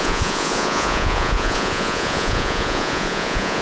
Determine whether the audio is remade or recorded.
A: remade